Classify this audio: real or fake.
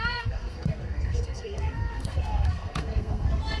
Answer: fake